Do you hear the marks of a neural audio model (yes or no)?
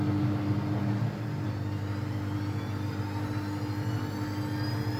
no